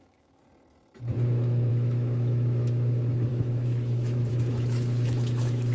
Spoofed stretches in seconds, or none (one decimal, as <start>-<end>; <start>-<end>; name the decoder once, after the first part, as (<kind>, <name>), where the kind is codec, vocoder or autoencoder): 0.0-0.4 (autoencoder, DAC-VAE); 1.7-5.7